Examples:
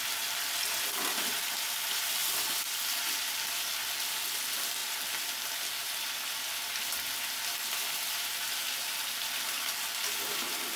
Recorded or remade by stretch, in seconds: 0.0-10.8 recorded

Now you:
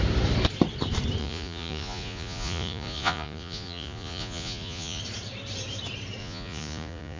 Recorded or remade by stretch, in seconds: 0.0-1.2 recorded; 1.2-5.0 remade; 5.0-6.2 recorded; 6.2-7.2 remade

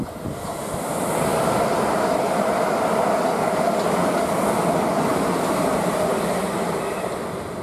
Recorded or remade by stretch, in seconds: 0.0-7.6 recorded

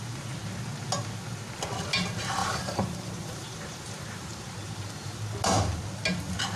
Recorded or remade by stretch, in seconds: 0.0-2.4 recorded; 2.4-5.2 remade; 5.2-6.6 recorded

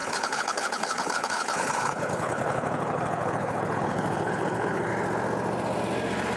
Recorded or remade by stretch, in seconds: 0.0-4.9 remade; 4.9-6.4 recorded

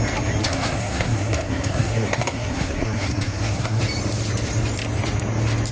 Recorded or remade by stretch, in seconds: 0.0-0.4 recorded; 0.4-3.8 remade; 3.8-5.7 recorded

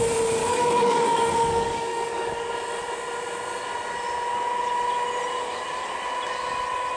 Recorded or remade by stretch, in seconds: 0.0-0.4 recorded; 0.4-2.5 remade; 2.5-7.0 recorded

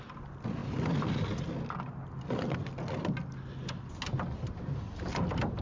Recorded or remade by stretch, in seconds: 0.0-5.6 recorded